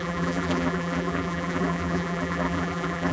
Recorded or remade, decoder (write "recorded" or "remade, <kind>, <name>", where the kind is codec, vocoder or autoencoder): remade, vocoder, BigVGAN v2